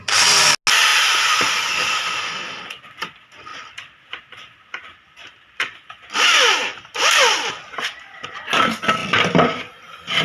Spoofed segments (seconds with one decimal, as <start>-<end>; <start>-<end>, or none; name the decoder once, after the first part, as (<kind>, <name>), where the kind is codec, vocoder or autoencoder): 0.9-2.0 (vocoder, BigVGAN v2); 3.5-7.5; 9.0-9.6